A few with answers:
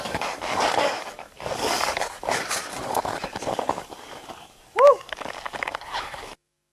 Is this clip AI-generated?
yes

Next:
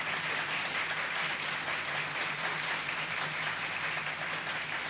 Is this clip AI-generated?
no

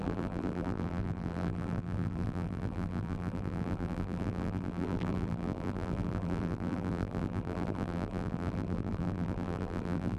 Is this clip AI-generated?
yes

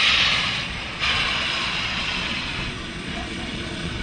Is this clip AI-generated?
yes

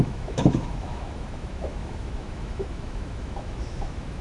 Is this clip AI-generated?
yes